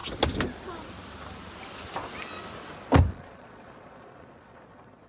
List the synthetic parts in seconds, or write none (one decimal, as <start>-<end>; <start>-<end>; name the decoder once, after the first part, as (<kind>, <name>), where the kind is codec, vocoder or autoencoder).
3.1-5.1 (vocoder, Vocos)